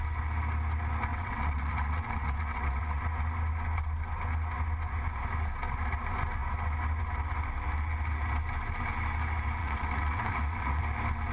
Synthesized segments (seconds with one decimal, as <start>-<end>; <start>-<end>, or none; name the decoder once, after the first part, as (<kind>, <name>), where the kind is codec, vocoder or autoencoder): 1.1-3.0 (vocoder, WaveNeXt); 9.6-10.8